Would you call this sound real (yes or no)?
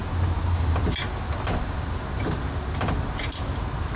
yes